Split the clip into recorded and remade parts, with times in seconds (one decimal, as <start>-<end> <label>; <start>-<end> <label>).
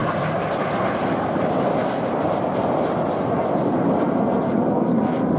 0.0-5.4 recorded